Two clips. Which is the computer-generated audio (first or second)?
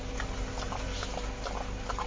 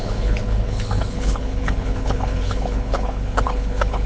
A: second